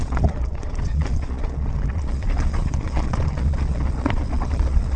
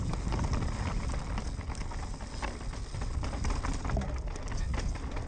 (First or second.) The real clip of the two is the second